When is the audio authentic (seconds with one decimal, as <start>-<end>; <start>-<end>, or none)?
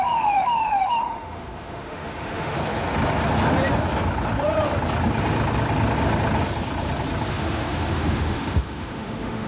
2.6-7.3